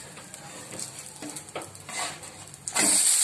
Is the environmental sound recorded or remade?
recorded